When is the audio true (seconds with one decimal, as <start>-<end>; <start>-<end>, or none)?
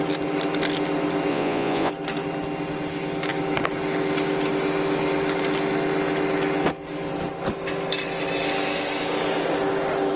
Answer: 0.0-1.3; 1.9-10.2